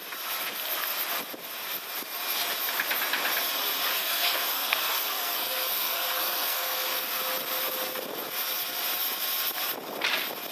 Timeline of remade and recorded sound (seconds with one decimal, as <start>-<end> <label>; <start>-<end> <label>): 0.0-3.9 recorded; 3.9-7.2 remade; 7.2-10.5 recorded

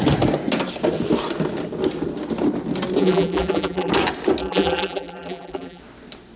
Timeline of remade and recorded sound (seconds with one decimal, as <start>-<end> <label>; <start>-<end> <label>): 0.0-3.0 recorded; 3.0-3.9 remade; 3.9-4.4 recorded; 4.4-5.8 remade; 5.8-6.4 recorded